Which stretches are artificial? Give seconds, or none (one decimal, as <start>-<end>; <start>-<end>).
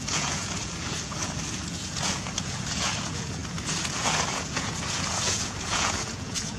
0.0-6.6